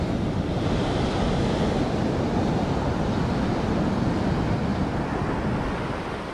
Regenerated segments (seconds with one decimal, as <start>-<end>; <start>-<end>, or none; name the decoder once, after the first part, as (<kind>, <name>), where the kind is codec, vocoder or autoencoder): none

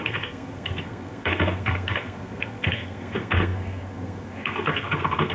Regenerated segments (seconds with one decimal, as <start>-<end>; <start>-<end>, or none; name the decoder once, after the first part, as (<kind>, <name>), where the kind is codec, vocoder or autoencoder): 0.0-5.3 (codec, SNAC)

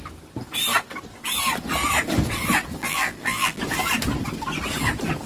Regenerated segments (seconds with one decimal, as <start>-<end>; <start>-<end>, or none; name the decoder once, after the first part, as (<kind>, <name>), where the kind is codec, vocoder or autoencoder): 2.8-3.6 (vocoder, BigVGAN v2)

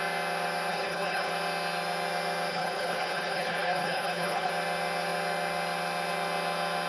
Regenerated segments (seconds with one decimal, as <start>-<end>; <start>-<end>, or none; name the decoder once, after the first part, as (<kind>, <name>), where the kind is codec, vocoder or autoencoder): 0.7-1.3 (codec, HILCodec); 2.5-4.5

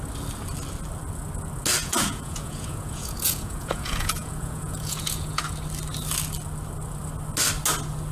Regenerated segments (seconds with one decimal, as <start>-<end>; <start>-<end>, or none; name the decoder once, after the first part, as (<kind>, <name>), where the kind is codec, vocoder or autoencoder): 1.8-5.4 (vocoder, Vocos)

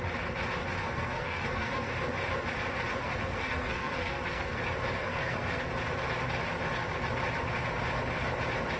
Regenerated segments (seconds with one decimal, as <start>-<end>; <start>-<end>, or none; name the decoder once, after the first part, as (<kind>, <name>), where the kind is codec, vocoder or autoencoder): 0.8-1.9 (codec, SNAC); 3.0-4.6; 5.0-5.6

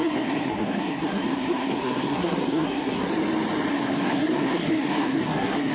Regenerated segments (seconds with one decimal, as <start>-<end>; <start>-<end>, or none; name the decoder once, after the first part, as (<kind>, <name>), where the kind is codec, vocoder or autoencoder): 0.0-3.1 (codec, SNAC); 3.7-5.7